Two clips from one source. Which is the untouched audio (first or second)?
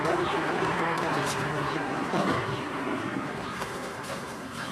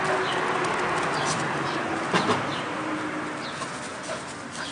second